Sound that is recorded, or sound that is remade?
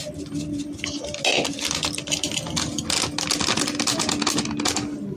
recorded